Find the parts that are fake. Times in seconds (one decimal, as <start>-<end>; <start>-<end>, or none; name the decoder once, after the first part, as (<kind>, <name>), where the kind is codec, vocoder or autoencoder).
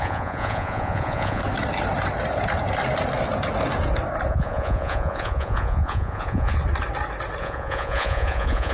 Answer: 0.0-1.4 (vocoder, Vocos); 4.3-6.6; 7.4-8.7